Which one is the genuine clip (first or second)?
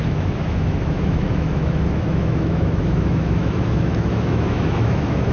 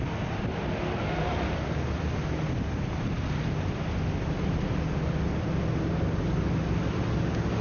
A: second